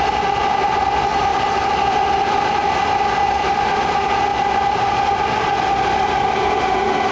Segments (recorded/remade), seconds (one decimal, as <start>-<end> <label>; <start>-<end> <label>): 0.0-7.1 recorded